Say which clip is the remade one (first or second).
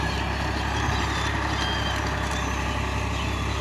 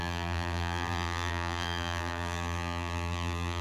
second